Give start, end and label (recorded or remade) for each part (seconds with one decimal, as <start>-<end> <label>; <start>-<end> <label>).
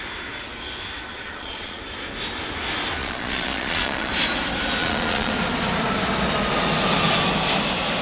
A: 0.0-1.1 recorded; 1.1-1.8 remade; 1.8-3.0 recorded; 3.0-4.1 remade; 4.1-4.8 recorded; 4.8-5.3 remade; 5.3-8.0 recorded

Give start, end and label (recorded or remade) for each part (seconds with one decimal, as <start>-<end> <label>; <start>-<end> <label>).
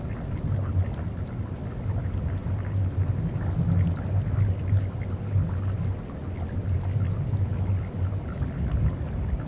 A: 0.0-9.5 recorded